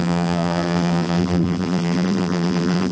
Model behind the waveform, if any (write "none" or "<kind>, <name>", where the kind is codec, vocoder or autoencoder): vocoder, BigVGAN v2